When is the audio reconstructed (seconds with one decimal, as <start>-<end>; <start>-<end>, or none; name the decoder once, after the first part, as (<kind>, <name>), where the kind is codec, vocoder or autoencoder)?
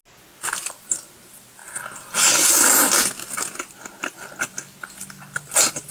none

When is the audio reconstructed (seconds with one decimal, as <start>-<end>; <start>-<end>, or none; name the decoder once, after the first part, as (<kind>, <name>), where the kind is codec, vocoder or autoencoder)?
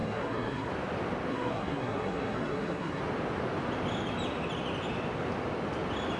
0.0-0.7 (codec, SNAC); 1.3-3.0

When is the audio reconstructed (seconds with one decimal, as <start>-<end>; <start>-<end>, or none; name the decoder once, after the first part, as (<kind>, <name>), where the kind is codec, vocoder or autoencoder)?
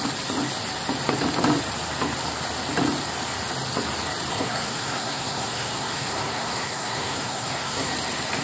4.3-7.9 (codec, SNAC)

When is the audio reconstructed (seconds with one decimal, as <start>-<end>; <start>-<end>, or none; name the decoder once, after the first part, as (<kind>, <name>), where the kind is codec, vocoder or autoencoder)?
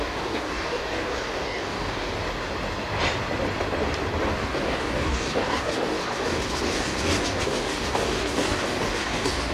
0.0-2.2 (codec, DAC); 4.3-9.5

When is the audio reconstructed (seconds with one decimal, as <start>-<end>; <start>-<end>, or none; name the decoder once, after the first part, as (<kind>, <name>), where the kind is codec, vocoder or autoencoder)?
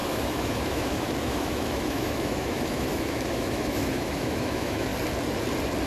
0.0-4.9 (autoencoder, DAC-VAE)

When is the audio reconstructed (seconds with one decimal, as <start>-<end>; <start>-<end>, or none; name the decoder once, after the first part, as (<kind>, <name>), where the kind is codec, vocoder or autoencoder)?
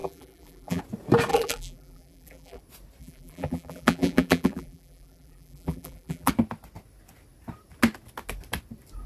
0.0-0.8 (vocoder, BigVGAN v2); 1.3-2.6; 3.0-6.3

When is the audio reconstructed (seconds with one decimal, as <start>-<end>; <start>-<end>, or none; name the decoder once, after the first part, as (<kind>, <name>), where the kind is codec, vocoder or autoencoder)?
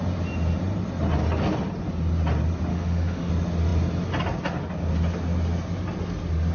2.7-3.3 (autoencoder, DAC-VAE)